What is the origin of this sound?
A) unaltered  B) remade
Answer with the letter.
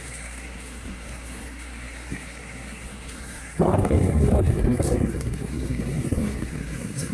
B